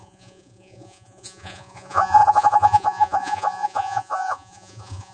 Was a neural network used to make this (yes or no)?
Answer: yes